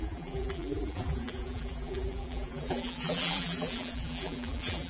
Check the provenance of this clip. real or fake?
fake